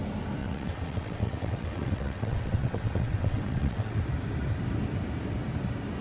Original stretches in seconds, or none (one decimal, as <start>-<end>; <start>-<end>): 0.0-0.4; 4.0-6.0

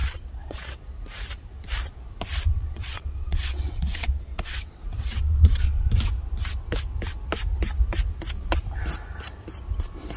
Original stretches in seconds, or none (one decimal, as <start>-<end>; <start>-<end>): 0.8-2.5; 5.9-10.2

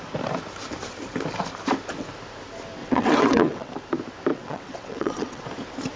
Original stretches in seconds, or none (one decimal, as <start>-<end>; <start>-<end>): 0.0-2.8; 3.7-4.3; 5.5-6.0

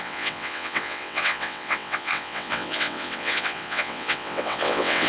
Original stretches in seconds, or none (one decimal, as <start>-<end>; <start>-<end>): none

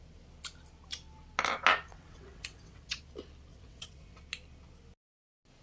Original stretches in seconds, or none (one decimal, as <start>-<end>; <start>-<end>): 0.0-1.9; 3.0-3.5; 4.2-5.6

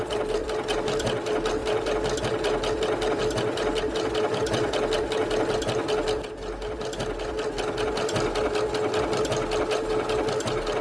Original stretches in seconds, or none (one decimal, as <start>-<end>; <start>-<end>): 0.0-10.8

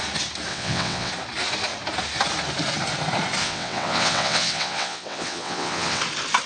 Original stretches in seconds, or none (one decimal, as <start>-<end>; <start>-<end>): 0.0-0.5; 1.1-3.4; 6.0-6.5